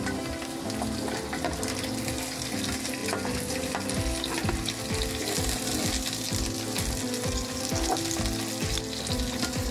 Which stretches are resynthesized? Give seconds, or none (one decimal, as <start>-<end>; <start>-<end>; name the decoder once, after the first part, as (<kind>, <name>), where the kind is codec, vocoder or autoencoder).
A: none

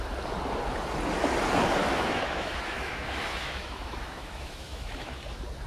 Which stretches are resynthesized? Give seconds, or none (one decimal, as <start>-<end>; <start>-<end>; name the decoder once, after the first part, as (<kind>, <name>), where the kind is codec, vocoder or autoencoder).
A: 1.8-5.2 (autoencoder, DAC-VAE)